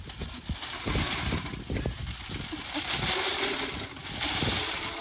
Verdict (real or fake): real